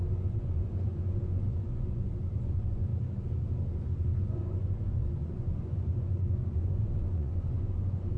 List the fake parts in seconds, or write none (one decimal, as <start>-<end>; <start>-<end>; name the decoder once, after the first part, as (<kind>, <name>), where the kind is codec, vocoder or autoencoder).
0.0-2.9 (vocoder, Vocos); 4.2-8.2